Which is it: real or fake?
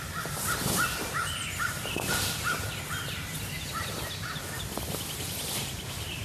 real